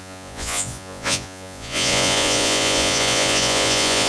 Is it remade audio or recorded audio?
remade